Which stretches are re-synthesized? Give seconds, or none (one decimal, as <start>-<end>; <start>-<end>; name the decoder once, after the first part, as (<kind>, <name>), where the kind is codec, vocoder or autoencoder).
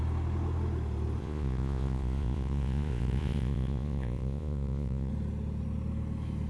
1.2-5.1 (vocoder, Vocos)